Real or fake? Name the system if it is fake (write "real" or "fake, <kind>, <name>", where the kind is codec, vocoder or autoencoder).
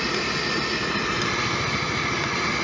real